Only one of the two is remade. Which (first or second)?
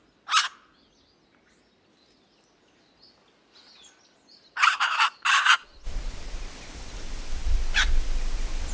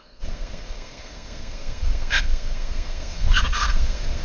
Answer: second